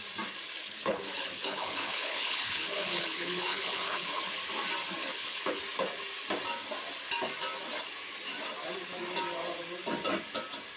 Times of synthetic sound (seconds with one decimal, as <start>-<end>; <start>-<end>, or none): 0.6-4.2; 5.0-5.6